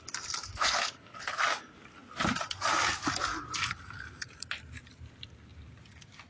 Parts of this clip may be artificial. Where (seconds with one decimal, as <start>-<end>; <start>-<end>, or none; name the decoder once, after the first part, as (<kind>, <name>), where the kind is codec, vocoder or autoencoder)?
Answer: 0.5-1.4 (codec, HILCodec)